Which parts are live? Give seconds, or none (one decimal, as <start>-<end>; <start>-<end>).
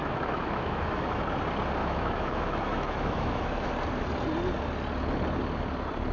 1.2-1.8; 3.7-6.1